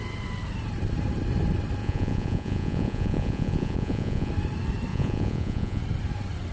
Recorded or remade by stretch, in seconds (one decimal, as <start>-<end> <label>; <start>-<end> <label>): 0.0-1.8 recorded; 1.8-4.3 remade; 4.3-4.9 recorded; 4.9-5.8 remade; 5.8-6.5 recorded